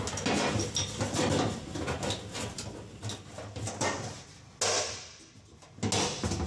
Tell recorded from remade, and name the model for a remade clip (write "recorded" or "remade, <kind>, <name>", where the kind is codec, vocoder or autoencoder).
recorded